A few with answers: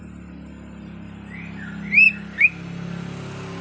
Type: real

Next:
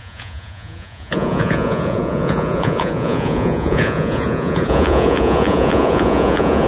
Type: fake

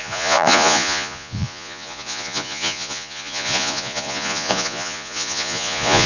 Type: fake